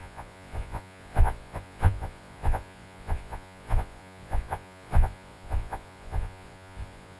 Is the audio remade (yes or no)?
yes